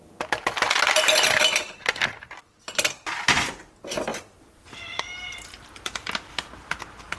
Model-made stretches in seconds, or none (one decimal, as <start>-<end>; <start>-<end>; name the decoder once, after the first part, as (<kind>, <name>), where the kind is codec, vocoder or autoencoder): none